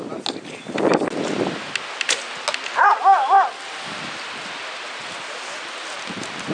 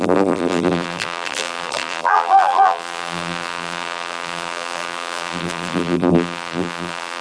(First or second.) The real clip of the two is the first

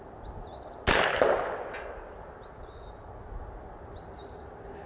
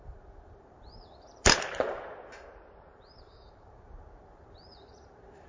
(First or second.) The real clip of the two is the first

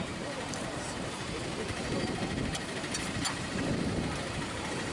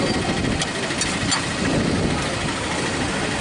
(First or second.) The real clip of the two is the second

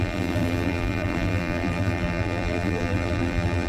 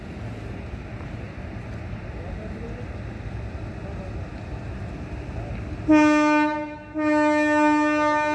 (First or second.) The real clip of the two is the second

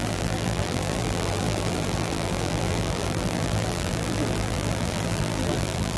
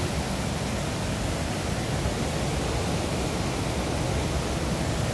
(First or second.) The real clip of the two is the second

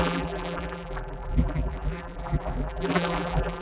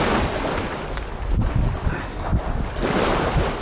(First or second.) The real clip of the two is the second